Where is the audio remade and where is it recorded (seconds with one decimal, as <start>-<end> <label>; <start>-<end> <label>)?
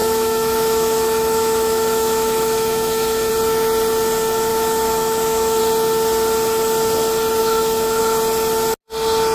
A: 0.0-3.3 remade; 3.3-4.5 recorded; 4.5-5.6 remade; 5.6-7.4 recorded; 7.4-8.0 remade; 8.0-9.3 recorded